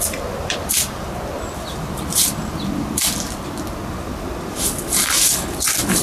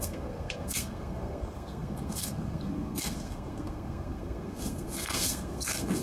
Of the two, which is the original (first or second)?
first